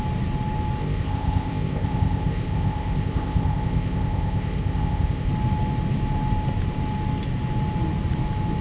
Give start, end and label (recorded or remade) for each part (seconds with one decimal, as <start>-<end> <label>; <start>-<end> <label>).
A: 0.0-0.8 recorded; 0.8-5.3 remade; 5.3-8.6 recorded